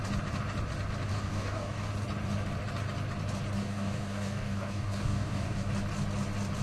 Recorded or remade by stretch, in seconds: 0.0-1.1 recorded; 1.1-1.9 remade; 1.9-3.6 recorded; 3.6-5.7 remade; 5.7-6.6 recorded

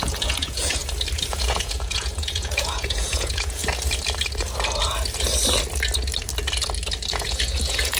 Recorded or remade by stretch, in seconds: 0.0-0.8 remade; 0.8-1.3 recorded; 1.3-3.6 remade; 3.6-7.1 recorded; 7.1-8.0 remade

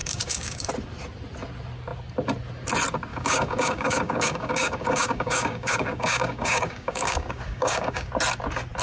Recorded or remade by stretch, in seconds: 0.0-0.7 remade; 0.7-3.1 recorded; 3.1-8.1 remade; 8.1-8.8 recorded